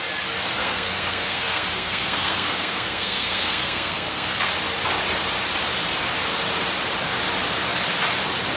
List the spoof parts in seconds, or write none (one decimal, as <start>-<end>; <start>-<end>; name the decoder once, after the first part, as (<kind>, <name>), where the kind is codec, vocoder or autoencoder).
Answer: 0.5-4.5 (codec, SNAC)

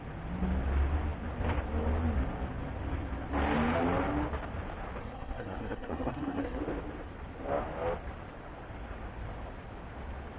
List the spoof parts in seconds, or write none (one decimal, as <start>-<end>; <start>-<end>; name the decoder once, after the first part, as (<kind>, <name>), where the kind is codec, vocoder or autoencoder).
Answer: 5.0-6.6 (codec, SNAC)

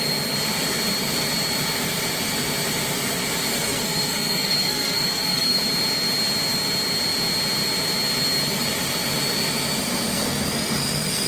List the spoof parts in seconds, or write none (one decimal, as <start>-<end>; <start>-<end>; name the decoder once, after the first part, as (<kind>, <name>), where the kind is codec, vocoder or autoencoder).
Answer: 3.5-5.6 (codec, SNAC); 9.8-11.3